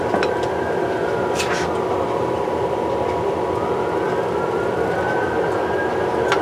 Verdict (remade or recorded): remade